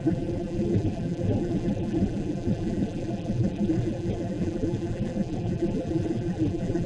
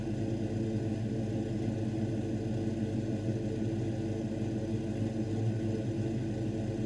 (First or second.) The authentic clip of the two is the second